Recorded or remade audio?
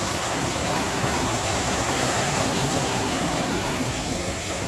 remade